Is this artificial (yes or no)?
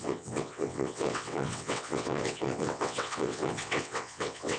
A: yes